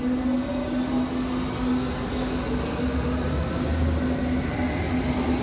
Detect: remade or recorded recorded